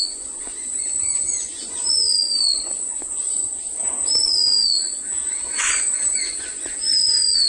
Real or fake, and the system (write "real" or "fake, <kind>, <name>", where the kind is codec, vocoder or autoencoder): fake, vocoder, Vocos